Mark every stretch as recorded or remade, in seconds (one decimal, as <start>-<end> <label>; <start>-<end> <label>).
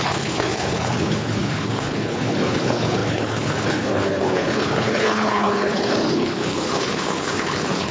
0.0-7.9 remade